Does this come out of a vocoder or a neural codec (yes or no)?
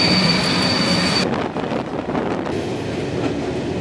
no